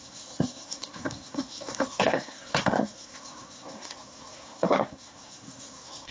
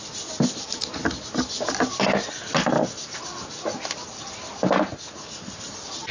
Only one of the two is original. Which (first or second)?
second